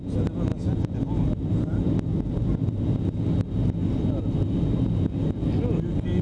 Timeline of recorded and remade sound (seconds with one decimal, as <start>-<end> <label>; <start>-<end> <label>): 0.0-6.2 recorded